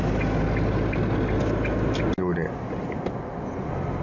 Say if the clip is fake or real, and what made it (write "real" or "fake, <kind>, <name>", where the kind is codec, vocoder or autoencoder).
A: real